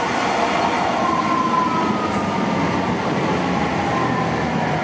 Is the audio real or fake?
real